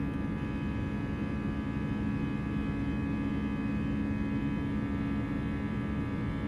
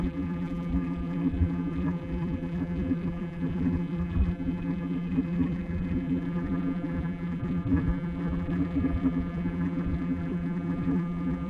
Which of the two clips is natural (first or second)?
first